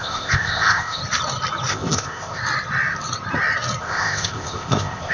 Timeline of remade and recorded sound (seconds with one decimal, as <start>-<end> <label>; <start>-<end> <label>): 0.0-1.0 remade; 1.0-1.7 recorded; 1.7-2.4 remade; 2.4-3.8 recorded; 3.8-5.1 remade